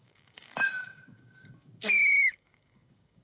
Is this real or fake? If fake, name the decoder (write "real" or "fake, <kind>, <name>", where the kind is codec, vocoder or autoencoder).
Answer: fake, codec, DAC